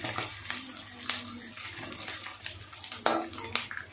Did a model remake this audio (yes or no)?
no